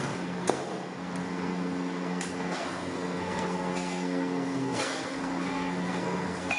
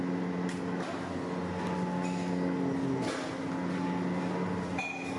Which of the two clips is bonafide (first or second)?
second